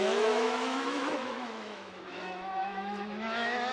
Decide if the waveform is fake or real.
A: fake